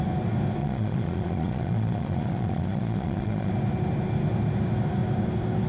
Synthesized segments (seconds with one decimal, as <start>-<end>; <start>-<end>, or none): 0.6-3.5